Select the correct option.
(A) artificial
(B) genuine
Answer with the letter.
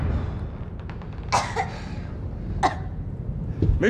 B